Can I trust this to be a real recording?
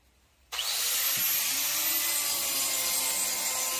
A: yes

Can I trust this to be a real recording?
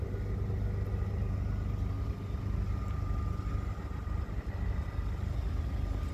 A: yes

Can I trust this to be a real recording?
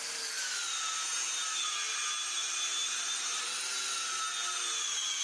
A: yes